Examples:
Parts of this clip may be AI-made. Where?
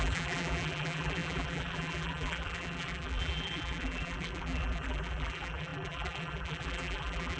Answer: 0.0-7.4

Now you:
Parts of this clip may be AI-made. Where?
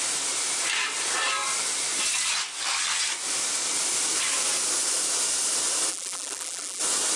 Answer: 5.9-6.8